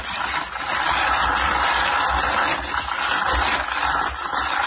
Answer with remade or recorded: recorded